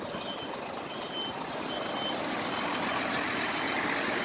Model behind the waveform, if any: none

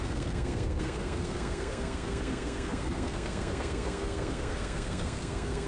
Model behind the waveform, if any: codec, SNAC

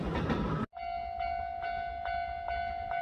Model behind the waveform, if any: none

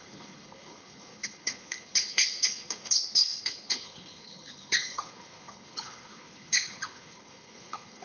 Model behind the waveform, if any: codec, HILCodec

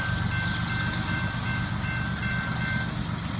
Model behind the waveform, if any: none